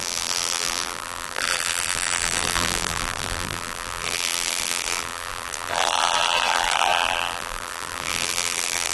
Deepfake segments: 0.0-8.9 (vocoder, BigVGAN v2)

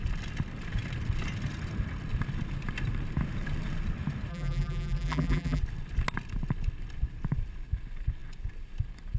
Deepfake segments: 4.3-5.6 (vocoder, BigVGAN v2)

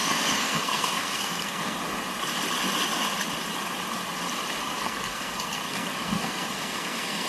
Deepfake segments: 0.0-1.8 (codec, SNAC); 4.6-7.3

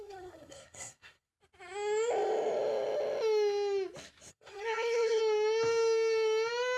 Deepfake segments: 0.0-1.3 (codec, SNAC); 4.3-5.2

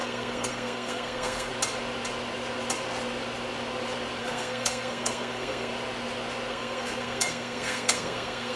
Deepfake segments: 0.0-1.5 (codec, SNAC); 4.2-5.7; 6.5-8.6

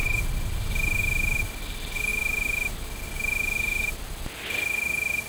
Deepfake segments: none

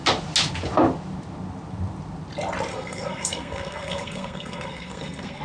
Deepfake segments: 2.7-5.4 (codec, SNAC)

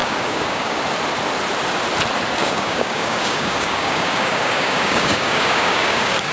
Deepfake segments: 0.0-0.8 (codec, DAC); 2.4-6.3